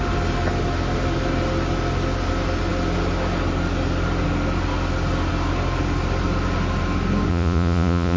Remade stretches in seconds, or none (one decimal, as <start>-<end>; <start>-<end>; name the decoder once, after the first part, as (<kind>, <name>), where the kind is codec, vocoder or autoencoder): 7.3-8.2 (vocoder, Vocos)